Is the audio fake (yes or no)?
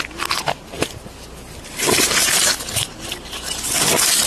no